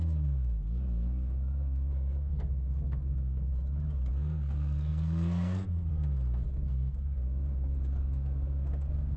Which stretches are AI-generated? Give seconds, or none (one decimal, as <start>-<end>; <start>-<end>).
0.0-3.5; 4.1-9.2

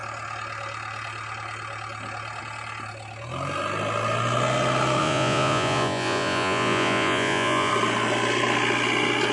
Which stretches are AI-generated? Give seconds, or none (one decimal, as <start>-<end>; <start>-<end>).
5.0-7.7

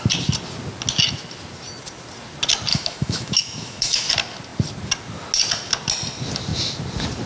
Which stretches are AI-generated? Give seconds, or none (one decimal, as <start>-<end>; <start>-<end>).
2.7-4.1

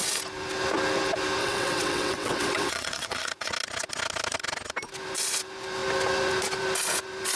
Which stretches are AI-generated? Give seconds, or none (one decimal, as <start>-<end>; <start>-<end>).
1.4-3.5